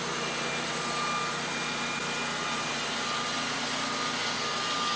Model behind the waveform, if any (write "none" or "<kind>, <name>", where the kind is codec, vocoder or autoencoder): none